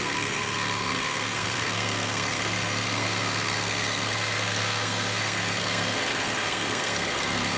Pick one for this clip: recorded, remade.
remade